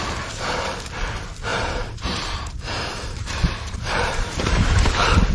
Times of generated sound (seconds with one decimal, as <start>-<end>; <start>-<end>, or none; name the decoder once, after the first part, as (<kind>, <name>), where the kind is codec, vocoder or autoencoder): 1.5-4.7 (vocoder, BigVGAN v2)